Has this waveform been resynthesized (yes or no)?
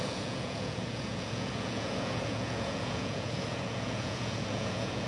yes